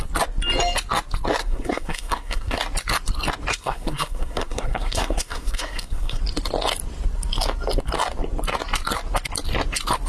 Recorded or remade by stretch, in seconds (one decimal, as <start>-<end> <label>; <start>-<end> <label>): 0.0-1.4 recorded; 1.4-2.6 remade; 2.6-3.5 recorded; 3.5-6.2 remade; 6.2-10.1 recorded